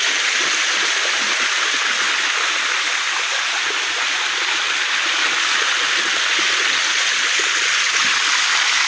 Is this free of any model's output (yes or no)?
yes